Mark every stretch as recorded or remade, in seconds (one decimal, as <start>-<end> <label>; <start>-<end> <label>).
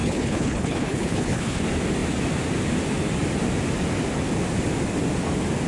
0.0-1.6 remade; 1.6-5.7 recorded